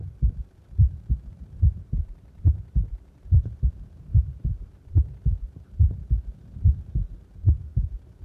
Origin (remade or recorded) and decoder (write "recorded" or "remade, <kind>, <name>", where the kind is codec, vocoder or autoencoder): remade, vocoder, BigVGAN v2